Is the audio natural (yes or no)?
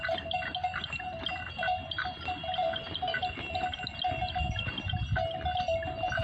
yes